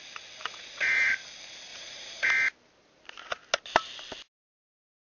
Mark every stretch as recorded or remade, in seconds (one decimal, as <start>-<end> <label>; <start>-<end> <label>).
0.0-0.4 recorded; 0.4-1.1 remade; 1.1-1.7 recorded; 1.7-2.3 remade; 2.3-5.0 recorded